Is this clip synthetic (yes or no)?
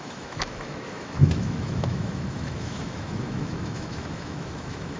yes